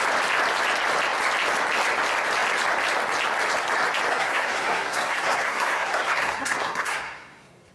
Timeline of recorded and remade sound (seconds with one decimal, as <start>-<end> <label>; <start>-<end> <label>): 0.0-4.1 recorded; 4.1-7.7 remade